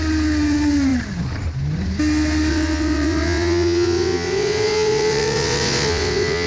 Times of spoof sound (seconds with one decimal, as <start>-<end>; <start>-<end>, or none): 2.5-6.5